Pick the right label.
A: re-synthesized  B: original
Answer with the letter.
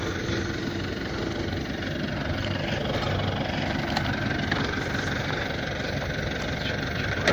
B